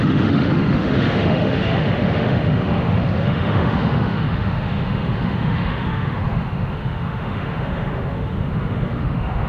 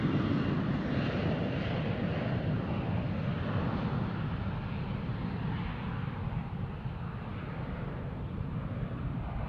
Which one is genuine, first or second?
second